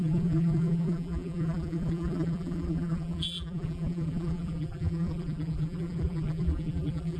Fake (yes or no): yes